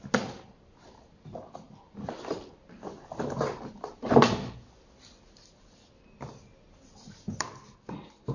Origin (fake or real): real